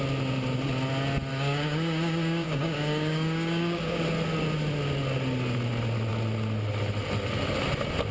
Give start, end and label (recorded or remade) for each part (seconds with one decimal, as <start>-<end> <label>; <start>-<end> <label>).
0.0-1.3 recorded; 1.3-4.0 remade; 4.0-8.1 recorded

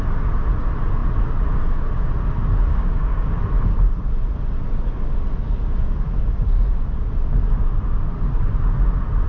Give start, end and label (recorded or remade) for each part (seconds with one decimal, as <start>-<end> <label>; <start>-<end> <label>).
0.0-2.7 recorded; 2.7-3.4 remade; 3.4-9.3 recorded

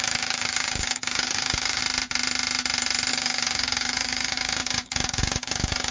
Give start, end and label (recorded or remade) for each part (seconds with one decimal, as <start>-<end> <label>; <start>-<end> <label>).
0.0-1.8 remade; 1.8-3.1 recorded; 3.1-5.9 remade

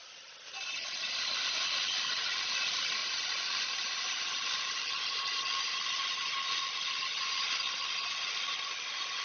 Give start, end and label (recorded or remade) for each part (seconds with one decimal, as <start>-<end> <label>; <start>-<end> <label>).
0.0-9.2 recorded

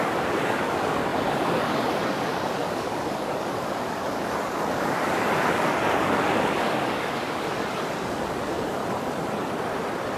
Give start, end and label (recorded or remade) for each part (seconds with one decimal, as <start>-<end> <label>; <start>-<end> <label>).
0.0-8.8 remade; 8.8-10.2 recorded

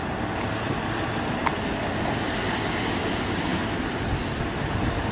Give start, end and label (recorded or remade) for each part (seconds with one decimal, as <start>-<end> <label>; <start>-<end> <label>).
0.0-5.1 recorded